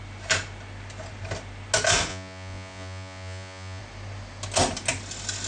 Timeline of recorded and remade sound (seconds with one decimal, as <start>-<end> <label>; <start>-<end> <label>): 0.0-2.1 recorded; 2.1-3.8 remade; 3.8-5.5 recorded